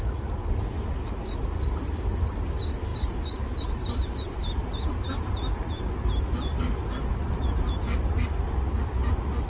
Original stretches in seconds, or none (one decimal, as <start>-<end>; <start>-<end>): 0.0-9.5